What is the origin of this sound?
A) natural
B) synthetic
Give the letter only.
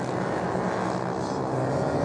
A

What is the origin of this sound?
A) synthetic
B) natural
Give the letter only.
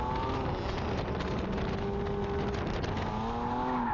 B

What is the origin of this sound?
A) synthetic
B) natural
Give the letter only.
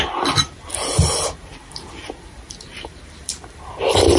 A